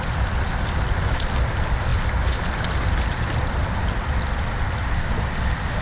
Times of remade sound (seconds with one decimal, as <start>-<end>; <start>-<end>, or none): none